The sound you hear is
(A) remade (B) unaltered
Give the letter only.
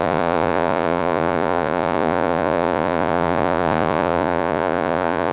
A